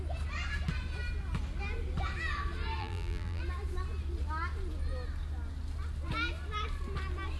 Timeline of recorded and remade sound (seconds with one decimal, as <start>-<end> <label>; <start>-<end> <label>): 0.0-2.8 recorded; 2.8-3.4 remade; 3.4-7.4 recorded